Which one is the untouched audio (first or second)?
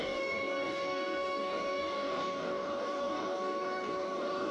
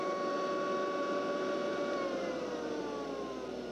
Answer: second